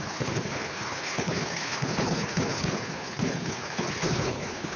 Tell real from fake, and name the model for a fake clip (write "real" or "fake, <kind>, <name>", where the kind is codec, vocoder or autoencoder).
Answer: fake, codec, HILCodec